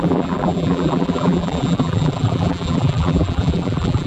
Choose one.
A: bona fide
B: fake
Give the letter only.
B